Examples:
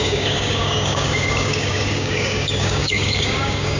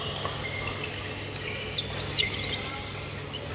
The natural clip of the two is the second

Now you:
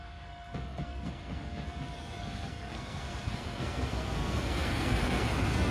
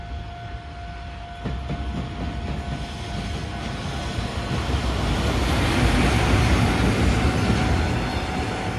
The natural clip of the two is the second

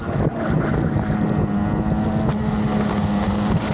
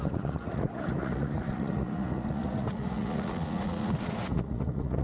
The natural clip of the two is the first